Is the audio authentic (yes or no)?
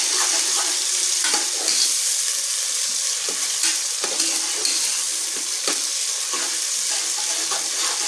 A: yes